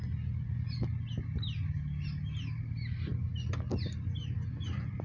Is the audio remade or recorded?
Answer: recorded